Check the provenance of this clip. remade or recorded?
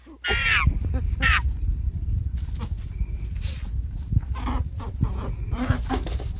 recorded